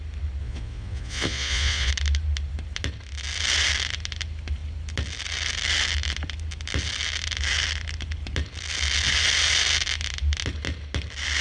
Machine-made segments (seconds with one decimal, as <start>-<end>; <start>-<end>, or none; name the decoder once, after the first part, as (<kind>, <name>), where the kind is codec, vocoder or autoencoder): 0.4-1.9 (vocoder, Vocos)